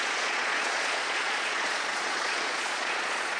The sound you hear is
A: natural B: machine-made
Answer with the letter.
B